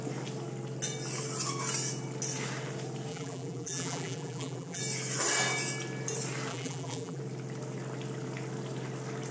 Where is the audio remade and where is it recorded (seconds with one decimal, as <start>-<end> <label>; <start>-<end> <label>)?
0.0-3.1 recorded; 3.1-4.8 remade; 4.8-6.5 recorded; 6.5-7.2 remade; 7.2-9.3 recorded